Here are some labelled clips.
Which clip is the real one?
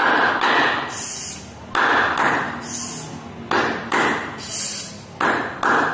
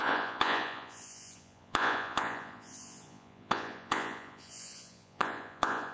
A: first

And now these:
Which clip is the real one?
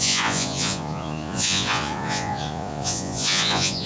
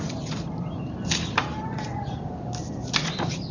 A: second